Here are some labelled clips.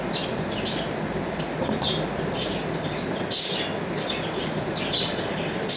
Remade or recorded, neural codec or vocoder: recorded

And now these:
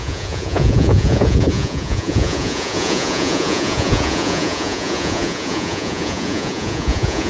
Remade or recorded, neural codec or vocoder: remade, vocoder, Vocos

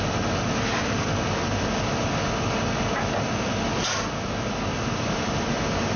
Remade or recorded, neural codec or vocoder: recorded